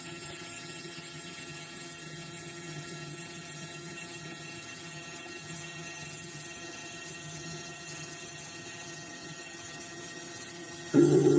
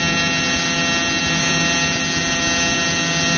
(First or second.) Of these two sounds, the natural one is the second